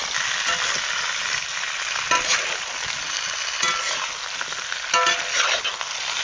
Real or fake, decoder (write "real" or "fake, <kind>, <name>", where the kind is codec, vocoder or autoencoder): real